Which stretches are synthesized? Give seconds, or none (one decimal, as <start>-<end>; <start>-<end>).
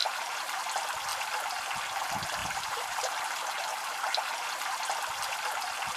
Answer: 0.0-0.6; 2.4-3.1